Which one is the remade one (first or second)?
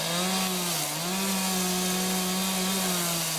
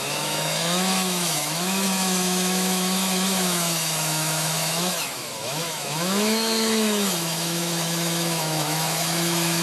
second